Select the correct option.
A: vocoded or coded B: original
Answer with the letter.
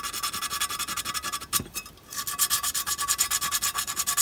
B